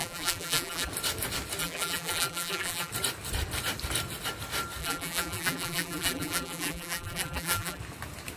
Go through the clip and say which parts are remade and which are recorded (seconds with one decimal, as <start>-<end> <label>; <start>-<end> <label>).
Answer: 0.0-0.9 remade; 0.9-1.6 recorded; 1.6-2.9 remade; 2.9-4.8 recorded; 4.8-7.8 remade; 7.8-8.4 recorded